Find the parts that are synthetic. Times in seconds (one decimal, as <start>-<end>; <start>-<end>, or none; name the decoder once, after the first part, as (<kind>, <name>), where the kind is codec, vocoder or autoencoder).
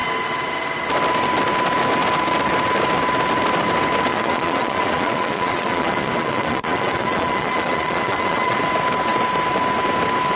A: 4.1-8.6 (vocoder, Vocos)